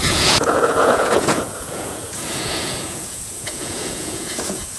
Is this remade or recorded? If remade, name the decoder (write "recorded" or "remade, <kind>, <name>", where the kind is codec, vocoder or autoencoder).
remade, vocoder, Vocos